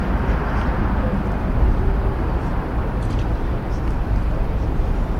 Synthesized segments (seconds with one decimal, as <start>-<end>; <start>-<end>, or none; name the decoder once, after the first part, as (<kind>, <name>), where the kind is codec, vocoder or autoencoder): 2.0-4.7 (vocoder, BigVGAN v2)